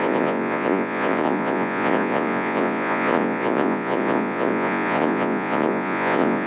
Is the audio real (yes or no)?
no